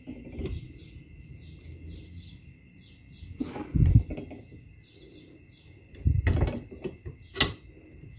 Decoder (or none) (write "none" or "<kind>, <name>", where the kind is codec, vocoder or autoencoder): none